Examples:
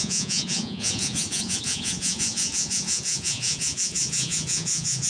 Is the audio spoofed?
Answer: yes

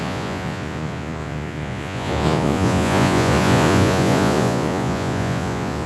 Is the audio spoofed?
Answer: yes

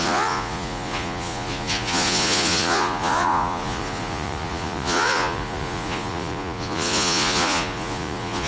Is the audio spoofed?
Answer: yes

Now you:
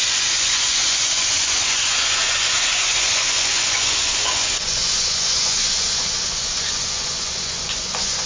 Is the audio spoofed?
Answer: yes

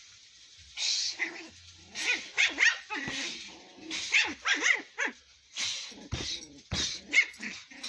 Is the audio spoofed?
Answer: no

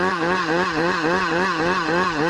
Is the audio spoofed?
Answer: yes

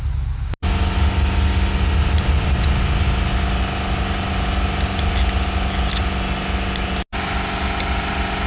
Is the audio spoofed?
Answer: no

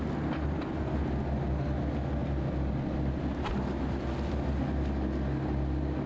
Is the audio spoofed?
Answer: no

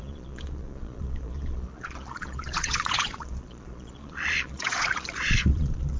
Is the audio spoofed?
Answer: yes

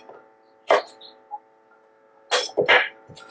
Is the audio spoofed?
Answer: no